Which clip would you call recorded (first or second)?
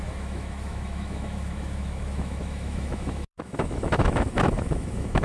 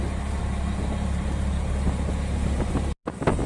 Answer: second